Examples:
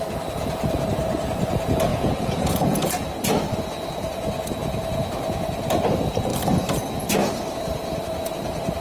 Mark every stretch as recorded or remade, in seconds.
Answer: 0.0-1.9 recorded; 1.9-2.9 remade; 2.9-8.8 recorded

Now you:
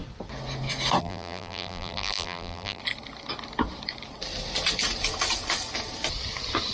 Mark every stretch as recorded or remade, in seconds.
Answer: 0.0-1.0 recorded; 1.0-2.8 remade; 2.8-6.7 recorded

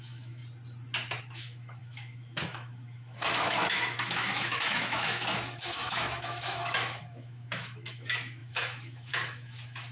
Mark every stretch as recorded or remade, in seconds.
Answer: 0.0-0.4 remade; 0.4-1.2 recorded; 1.2-9.9 remade

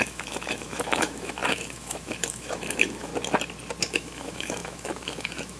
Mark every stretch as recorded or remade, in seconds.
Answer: 0.0-3.1 remade; 3.1-3.8 recorded; 3.8-5.6 remade

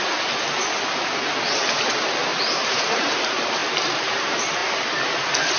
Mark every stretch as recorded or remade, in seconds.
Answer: 0.0-2.3 recorded; 2.3-3.0 remade; 3.0-5.6 recorded

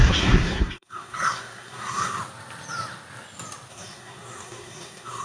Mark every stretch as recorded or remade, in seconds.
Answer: 0.0-2.2 remade; 2.2-3.7 recorded; 3.7-5.2 remade

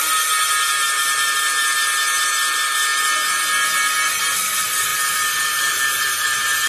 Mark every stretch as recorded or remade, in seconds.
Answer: 0.0-6.7 recorded